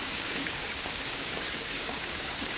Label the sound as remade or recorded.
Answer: remade